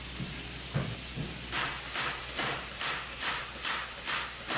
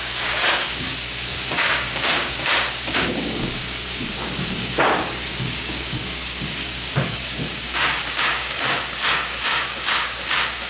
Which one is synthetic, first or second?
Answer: second